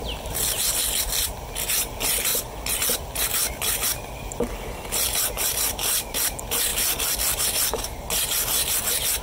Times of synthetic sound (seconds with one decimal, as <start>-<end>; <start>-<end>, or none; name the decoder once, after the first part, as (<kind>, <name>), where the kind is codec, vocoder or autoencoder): 0.0-2.3 (vocoder, BigVGAN v2); 3.5-9.2